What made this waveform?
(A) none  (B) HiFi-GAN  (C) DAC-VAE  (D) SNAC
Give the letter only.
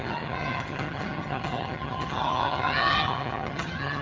B